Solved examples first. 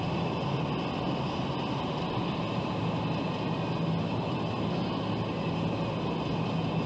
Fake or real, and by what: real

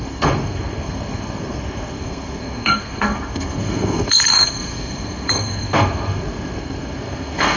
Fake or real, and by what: fake, codec, SNAC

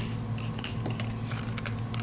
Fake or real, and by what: real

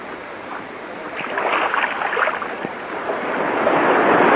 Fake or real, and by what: real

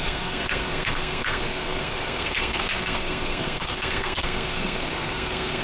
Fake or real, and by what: fake, codec, SNAC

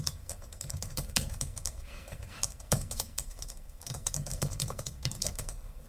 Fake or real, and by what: fake, codec, SNAC